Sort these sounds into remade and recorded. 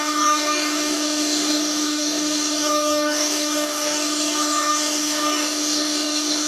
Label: remade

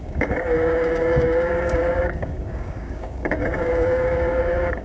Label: remade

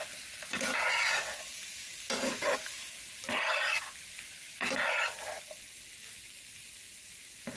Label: recorded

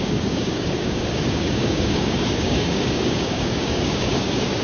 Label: remade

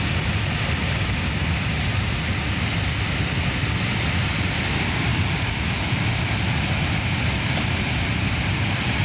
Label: recorded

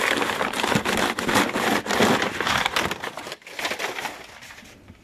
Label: recorded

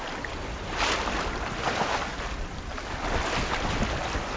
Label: recorded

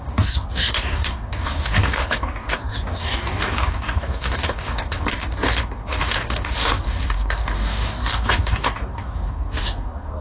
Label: remade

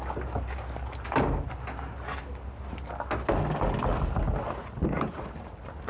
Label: recorded